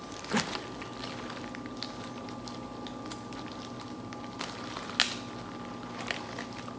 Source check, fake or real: real